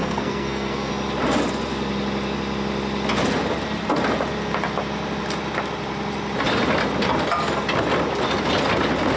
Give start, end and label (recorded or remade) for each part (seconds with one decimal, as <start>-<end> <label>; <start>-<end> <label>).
0.0-0.9 remade; 0.9-9.2 recorded